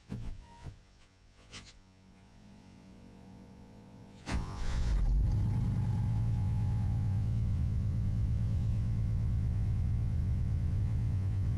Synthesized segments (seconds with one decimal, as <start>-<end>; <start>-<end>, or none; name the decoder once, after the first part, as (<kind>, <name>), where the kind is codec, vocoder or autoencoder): 0.0-4.9 (vocoder, Vocos); 6.1-11.6